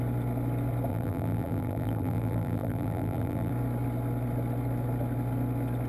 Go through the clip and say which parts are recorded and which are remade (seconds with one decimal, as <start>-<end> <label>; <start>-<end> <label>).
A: 0.0-0.9 recorded; 0.9-3.5 remade; 3.5-5.9 recorded